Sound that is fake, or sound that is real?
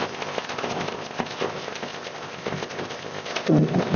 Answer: fake